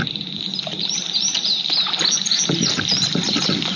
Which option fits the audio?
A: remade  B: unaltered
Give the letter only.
B